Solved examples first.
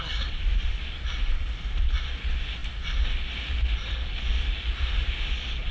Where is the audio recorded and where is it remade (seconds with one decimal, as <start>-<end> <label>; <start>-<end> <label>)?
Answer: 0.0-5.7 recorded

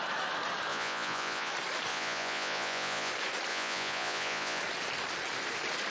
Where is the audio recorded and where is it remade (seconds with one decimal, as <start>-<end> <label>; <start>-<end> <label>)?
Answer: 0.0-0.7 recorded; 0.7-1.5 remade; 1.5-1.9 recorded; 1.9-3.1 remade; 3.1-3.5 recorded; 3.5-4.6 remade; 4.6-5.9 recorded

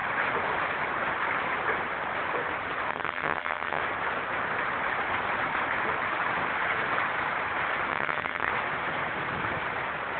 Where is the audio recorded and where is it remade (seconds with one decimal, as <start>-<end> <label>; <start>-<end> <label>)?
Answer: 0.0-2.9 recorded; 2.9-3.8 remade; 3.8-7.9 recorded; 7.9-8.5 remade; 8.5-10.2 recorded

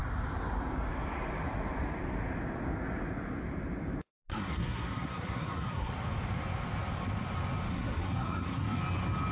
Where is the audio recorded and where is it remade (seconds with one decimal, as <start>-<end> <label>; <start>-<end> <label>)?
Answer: 0.0-4.3 recorded; 4.3-5.9 remade; 5.9-7.7 recorded; 7.7-8.8 remade; 8.8-9.3 recorded

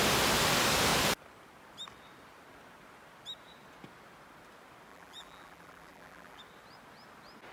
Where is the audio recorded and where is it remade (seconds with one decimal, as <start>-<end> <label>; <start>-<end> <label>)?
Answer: 0.0-4.9 recorded; 4.9-6.4 remade; 6.4-7.5 recorded

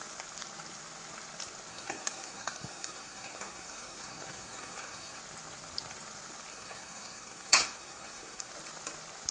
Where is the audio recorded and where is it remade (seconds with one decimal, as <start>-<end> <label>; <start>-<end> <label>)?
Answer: 0.0-1.7 recorded; 1.7-5.2 remade; 5.2-6.5 recorded; 6.5-8.5 remade; 8.5-9.3 recorded